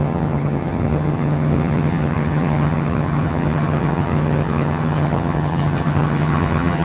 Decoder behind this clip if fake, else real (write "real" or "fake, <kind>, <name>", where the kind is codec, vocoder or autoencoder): fake, vocoder, HiFi-GAN